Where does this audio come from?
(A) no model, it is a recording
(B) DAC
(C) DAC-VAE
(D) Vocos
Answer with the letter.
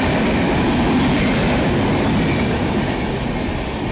A